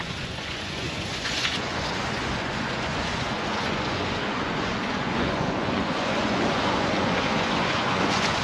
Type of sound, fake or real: fake